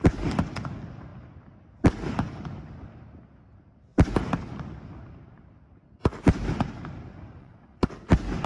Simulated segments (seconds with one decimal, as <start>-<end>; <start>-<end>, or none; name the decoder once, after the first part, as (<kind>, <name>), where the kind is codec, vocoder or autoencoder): 7.4-7.9 (vocoder, WaveNeXt)

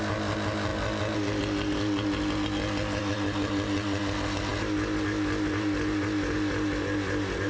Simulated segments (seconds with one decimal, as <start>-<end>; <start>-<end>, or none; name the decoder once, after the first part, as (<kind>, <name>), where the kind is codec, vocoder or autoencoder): none

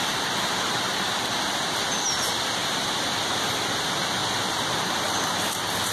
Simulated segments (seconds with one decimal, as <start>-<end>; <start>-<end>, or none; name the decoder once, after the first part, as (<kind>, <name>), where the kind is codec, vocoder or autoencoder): none

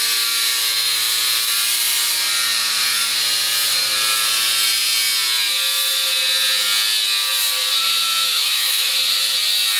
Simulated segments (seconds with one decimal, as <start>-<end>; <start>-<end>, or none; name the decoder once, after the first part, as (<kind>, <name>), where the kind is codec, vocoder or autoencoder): 8.3-8.9 (autoencoder, DAC-VAE)

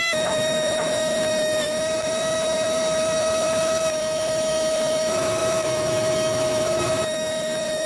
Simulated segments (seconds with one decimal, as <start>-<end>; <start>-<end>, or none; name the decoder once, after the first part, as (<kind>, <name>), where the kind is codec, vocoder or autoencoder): 0.0-7.9 (autoencoder, DAC-VAE)

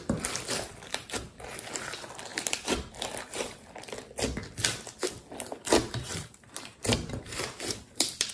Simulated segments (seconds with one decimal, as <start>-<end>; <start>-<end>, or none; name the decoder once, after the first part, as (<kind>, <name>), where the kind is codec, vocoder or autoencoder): 2.3-2.9 (vocoder, BigVGAN v2); 5.8-8.3

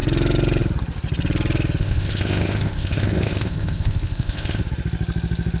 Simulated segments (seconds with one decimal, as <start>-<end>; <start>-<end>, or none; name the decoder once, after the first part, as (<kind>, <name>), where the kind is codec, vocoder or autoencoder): 1.8-4.6 (codec, ZipCodec)

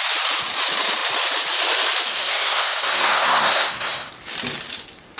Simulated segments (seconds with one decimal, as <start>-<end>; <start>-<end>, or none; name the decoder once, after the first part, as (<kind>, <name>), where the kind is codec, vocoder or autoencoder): 2.1-4.1 (codec, SNAC)